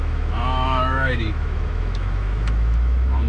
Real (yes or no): no